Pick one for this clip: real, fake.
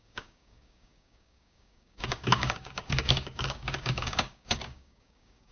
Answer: fake